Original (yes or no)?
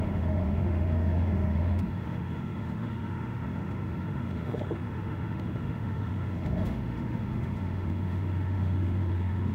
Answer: no